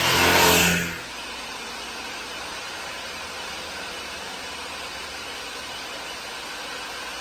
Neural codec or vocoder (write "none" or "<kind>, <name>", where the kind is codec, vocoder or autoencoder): none